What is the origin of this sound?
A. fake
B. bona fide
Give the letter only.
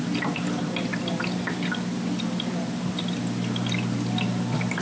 B